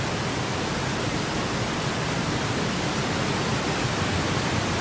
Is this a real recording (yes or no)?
no